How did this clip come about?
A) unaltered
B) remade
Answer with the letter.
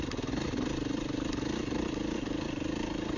A